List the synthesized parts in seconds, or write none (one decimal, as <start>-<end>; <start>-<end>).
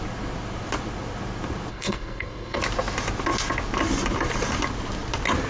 1.7-2.6